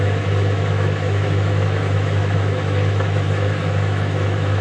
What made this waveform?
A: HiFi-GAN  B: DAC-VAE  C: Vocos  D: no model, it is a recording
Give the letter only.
B